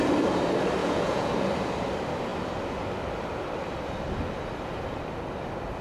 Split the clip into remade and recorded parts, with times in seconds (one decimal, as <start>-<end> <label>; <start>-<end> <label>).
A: 0.0-0.8 recorded; 0.8-1.3 remade; 1.3-5.8 recorded